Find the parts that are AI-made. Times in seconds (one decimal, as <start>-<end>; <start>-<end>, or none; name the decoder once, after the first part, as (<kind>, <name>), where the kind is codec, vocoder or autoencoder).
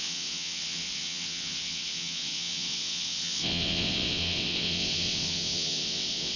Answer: 0.0-6.4 (vocoder, WaveNeXt)